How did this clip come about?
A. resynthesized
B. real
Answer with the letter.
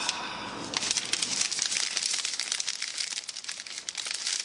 B